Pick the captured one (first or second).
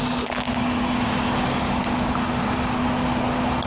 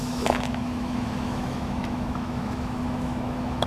first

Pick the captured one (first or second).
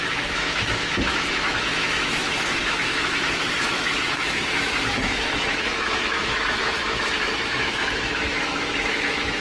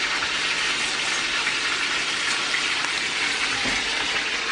second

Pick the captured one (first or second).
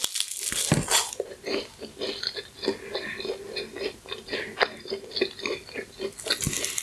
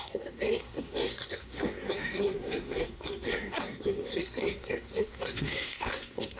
first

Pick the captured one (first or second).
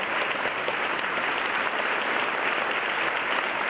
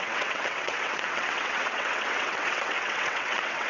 first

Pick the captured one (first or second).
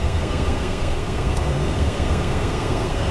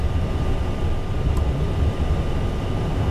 second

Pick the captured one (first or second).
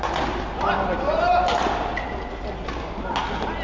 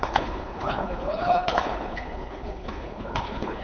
first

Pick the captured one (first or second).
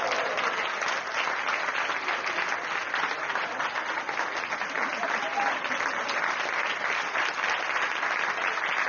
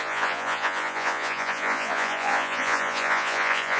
first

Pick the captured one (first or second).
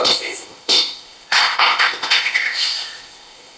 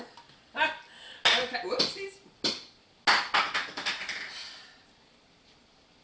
second